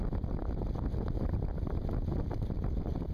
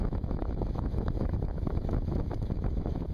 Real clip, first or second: first